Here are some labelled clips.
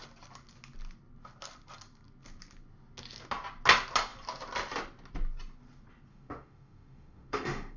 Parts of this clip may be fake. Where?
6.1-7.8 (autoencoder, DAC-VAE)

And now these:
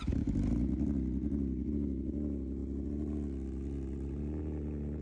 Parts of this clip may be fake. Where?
none

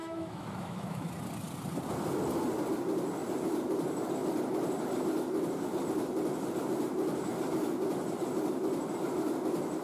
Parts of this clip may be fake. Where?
0.0-1.1 (autoencoder, DAC-VAE)

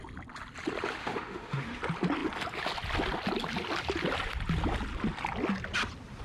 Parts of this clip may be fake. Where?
1.0-1.8 (autoencoder, DAC-VAE)

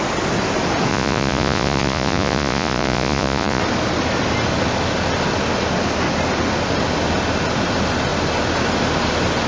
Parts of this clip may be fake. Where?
0.9-3.6 (vocoder, Vocos)